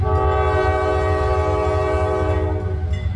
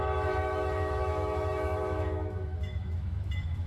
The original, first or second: first